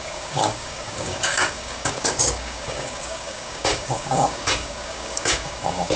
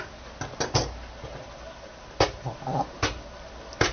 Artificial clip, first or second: first